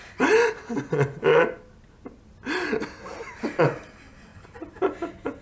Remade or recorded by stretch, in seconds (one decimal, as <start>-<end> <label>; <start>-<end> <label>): 0.0-5.4 recorded